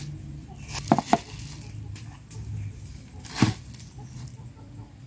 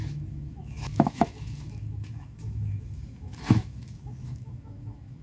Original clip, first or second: first